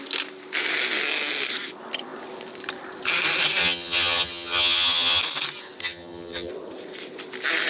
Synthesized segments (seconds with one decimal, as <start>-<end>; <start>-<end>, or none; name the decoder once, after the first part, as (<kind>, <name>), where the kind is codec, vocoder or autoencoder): 3.6-5.2 (vocoder, HiFi-GAN); 5.8-6.5